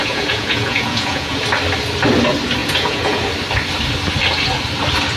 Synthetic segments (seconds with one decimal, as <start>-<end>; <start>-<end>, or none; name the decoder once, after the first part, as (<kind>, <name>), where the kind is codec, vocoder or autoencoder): 0.0-1.4 (vocoder, Vocos); 2.6-3.2